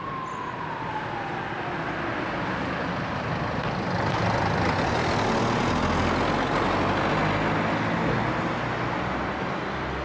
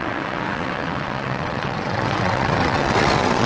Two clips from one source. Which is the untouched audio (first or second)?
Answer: first